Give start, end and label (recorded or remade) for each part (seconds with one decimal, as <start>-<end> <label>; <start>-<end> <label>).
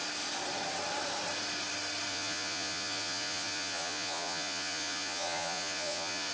0.0-2.1 recorded; 2.1-6.3 remade